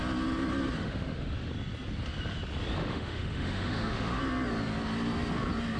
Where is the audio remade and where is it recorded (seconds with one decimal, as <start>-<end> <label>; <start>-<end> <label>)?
0.0-0.8 recorded; 0.8-1.5 remade; 1.5-2.8 recorded; 2.8-4.2 remade; 4.2-5.8 recorded